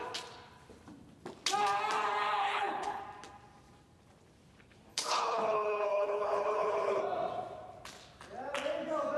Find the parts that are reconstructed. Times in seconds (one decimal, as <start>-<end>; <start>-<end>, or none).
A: 2.4-3.0; 4.9-7.0